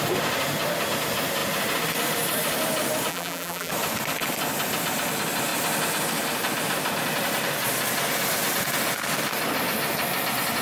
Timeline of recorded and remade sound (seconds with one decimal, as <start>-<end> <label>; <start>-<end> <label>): 0.0-3.1 recorded; 3.1-3.7 remade; 3.7-10.6 recorded